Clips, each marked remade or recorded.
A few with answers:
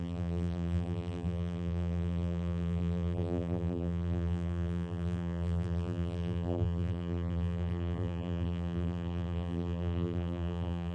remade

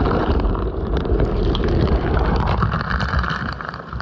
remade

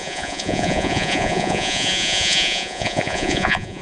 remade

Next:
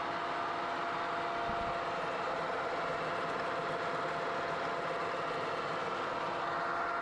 recorded